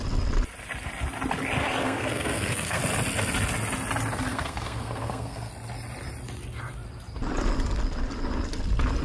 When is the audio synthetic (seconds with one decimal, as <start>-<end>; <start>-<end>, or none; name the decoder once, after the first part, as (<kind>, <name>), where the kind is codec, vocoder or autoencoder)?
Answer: 1.8-2.8 (codec, SNAC); 4.3-5.5